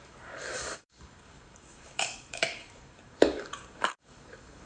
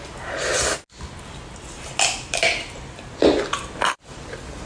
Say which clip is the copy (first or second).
first